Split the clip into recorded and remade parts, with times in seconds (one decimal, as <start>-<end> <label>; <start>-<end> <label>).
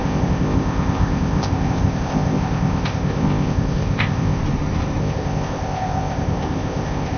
0.0-4.4 remade; 4.4-5.0 recorded; 5.0-7.2 remade